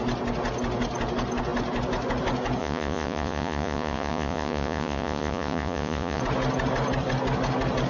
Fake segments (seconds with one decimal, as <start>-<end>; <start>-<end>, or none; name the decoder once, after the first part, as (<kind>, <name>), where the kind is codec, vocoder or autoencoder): 2.6-6.2 (vocoder, Vocos)